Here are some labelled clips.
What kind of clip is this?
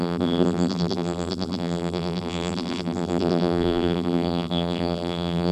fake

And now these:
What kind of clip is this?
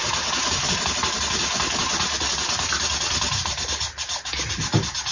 real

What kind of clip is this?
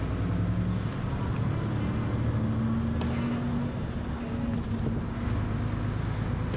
real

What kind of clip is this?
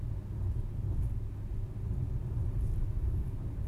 real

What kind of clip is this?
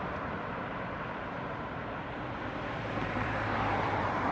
fake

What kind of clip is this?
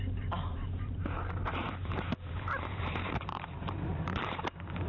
fake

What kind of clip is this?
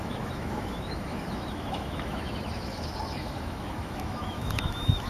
fake